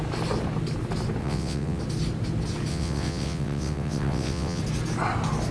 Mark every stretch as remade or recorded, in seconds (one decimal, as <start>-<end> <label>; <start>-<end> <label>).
0.0-1.2 recorded; 1.2-1.8 remade; 1.8-2.7 recorded; 2.7-4.6 remade; 4.6-5.5 recorded